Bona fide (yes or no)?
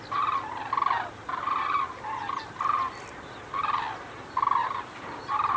yes